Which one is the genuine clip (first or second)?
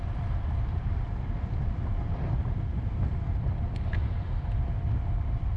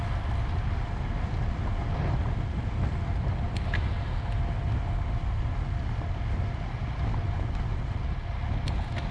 second